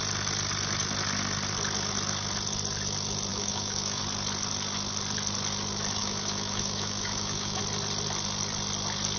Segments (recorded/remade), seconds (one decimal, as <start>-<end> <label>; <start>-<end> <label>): 0.0-3.3 recorded; 3.3-4.0 remade; 4.0-6.0 recorded; 6.0-7.6 remade; 7.6-9.2 recorded